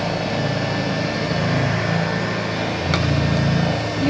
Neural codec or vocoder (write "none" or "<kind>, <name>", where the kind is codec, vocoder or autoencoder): none